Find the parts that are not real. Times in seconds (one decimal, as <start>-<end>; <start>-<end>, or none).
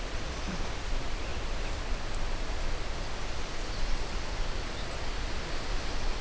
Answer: none